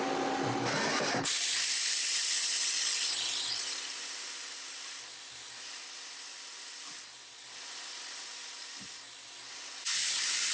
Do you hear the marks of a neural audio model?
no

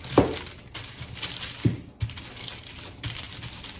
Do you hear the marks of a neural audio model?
no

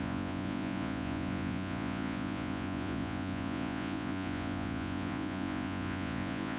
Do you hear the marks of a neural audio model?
yes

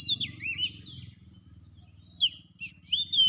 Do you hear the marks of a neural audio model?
no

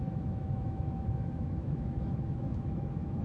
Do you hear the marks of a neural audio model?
yes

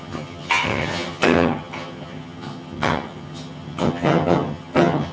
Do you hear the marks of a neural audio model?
yes